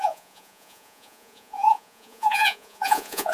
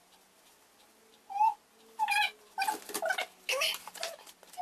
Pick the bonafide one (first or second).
second